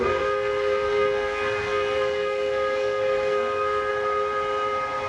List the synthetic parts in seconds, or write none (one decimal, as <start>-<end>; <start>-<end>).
0.0-3.9